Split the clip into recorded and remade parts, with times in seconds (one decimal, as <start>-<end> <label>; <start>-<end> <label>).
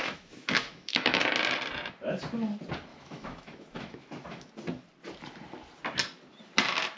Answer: 0.0-1.3 remade; 1.3-2.9 recorded; 2.9-4.5 remade; 4.5-7.0 recorded